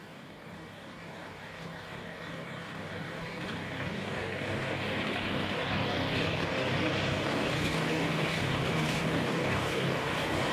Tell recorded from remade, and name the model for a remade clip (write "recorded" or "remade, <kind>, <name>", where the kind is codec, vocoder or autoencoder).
remade, codec, DAC